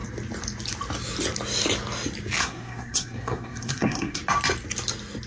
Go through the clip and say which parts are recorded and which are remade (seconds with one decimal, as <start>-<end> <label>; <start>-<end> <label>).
0.0-2.4 recorded; 2.4-4.2 remade; 4.2-5.3 recorded